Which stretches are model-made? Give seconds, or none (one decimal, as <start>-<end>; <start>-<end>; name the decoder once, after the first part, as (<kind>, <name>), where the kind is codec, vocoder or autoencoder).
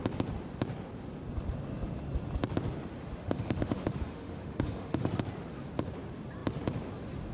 3.2-5.0 (autoencoder, DAC-VAE)